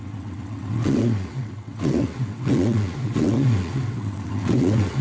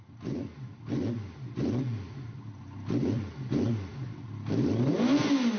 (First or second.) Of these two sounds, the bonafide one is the second